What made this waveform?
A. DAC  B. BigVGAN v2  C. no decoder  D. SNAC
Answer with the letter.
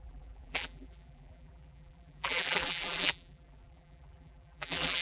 B